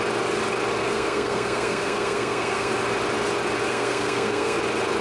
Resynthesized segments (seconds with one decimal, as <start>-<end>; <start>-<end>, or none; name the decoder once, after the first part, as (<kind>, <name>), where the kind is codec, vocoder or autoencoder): 0.8-2.7 (codec, SNAC); 3.7-4.6